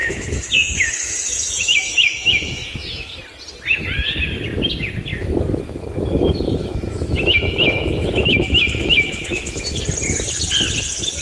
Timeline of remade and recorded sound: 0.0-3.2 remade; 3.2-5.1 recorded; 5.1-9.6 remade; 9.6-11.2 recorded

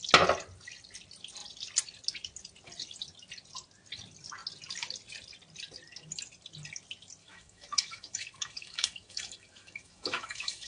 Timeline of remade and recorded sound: 0.0-7.2 recorded; 7.2-10.7 remade

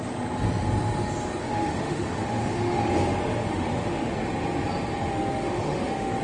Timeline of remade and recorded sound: 0.0-1.4 recorded; 1.4-2.9 remade; 2.9-3.4 recorded; 3.4-4.2 remade; 4.2-5.1 recorded; 5.1-6.2 remade

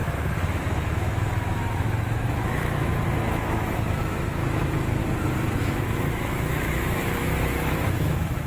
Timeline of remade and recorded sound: 0.0-5.0 remade; 5.0-5.6 recorded; 5.6-8.5 remade

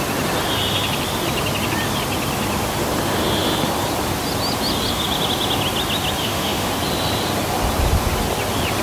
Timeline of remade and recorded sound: 0.0-6.2 recorded; 6.2-6.7 remade; 6.7-8.8 recorded

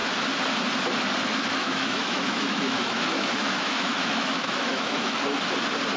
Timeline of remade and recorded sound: 0.0-1.6 recorded; 1.6-5.2 remade; 5.2-6.0 recorded

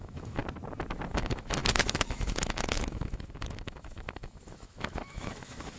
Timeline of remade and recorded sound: 0.0-0.4 remade; 0.4-1.1 recorded; 1.1-5.8 remade